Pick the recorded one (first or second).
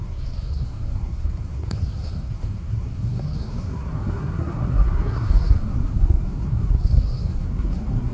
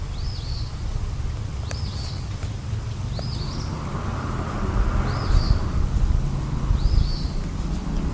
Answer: second